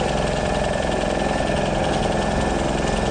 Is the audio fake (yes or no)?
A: no